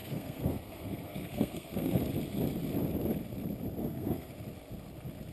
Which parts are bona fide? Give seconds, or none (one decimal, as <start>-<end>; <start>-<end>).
2.0-3.8; 4.3-5.3